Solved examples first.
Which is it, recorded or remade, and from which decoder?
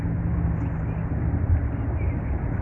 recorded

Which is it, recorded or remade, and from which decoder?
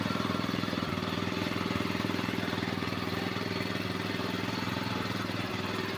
remade, vocoder, BigVGAN v2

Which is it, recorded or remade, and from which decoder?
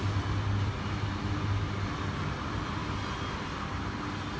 recorded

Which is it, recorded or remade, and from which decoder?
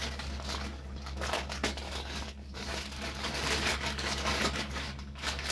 remade, codec, DAC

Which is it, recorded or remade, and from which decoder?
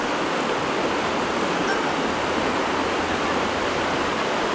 recorded